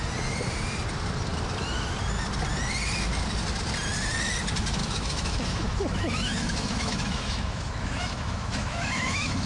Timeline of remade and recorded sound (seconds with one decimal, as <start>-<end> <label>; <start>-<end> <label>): 0.0-4.8 recorded; 4.8-9.5 remade